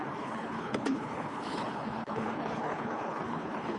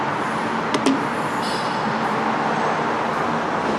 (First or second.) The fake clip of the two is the first